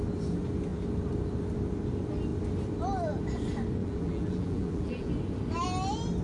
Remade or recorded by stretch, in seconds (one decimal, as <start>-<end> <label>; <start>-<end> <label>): 0.0-3.8 recorded; 3.8-5.1 remade; 5.1-6.2 recorded